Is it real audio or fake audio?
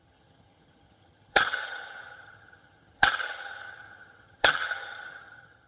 fake